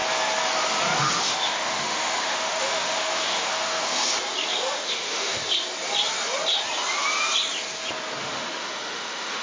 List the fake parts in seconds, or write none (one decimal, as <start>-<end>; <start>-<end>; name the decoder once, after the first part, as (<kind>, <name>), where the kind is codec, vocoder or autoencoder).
1.0-4.1 (autoencoder, DAC-VAE); 4.6-5.4; 8.2-9.4